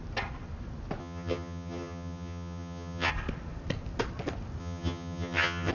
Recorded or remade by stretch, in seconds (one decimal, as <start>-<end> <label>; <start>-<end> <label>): 0.0-1.0 recorded; 1.0-3.1 remade; 3.1-4.6 recorded; 4.6-5.7 remade